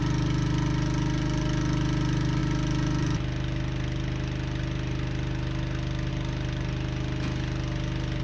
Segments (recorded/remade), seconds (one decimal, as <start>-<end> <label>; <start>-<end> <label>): 0.0-2.4 recorded; 2.4-6.1 remade; 6.1-8.2 recorded